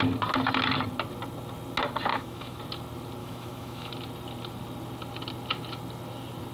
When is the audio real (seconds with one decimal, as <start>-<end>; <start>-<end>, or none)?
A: 0.0-2.1; 2.6-3.2; 3.9-6.5